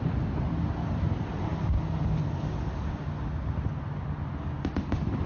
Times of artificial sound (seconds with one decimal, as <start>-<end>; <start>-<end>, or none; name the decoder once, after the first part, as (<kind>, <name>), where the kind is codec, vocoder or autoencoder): none